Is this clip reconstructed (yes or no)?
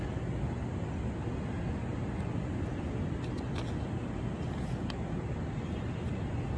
no